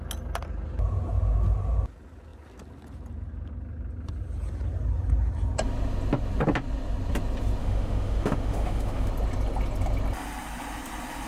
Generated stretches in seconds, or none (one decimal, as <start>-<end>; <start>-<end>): 7.6-9.1